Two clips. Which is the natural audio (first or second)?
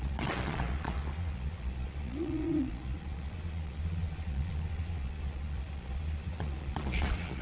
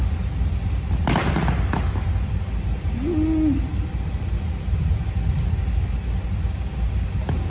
second